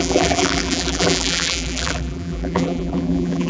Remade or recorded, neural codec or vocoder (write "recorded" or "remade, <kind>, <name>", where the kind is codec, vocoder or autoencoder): remade, vocoder, BigVGAN v2